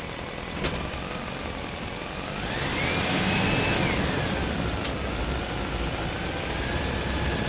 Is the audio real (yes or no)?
yes